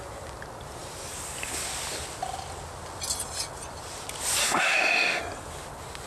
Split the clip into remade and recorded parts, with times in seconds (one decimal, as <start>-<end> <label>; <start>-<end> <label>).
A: 0.0-4.4 recorded; 4.4-5.2 remade; 5.2-6.1 recorded